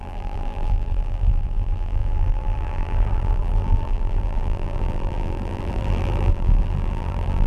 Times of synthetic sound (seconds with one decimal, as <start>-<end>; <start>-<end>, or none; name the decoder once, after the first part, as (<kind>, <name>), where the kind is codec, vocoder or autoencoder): 0.0-7.5 (vocoder, BigVGAN v2)